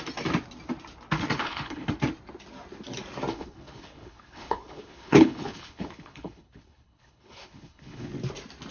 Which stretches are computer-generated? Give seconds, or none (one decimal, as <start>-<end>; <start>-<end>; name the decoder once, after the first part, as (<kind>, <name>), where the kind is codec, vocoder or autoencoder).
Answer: 1.4-1.9 (codec, HILCodec); 3.3-8.1